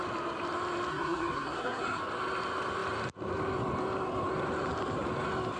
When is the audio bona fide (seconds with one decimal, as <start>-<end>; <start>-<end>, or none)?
0.0-0.9; 2.0-5.6